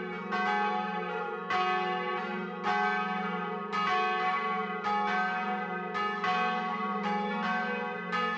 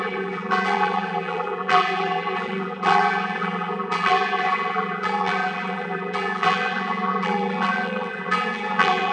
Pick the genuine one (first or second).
first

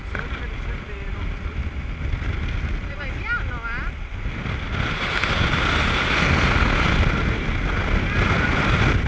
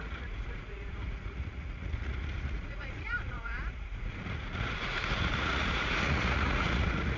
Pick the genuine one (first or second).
first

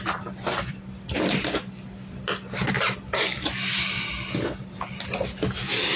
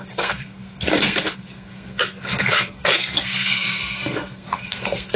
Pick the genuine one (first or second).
first